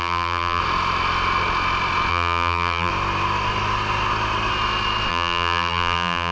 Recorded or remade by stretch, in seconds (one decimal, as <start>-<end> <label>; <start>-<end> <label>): 0.0-0.6 remade; 0.6-2.1 recorded; 2.1-2.9 remade; 2.9-5.1 recorded; 5.1-6.3 remade